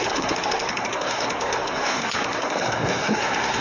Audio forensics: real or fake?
fake